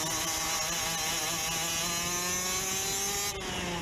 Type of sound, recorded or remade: recorded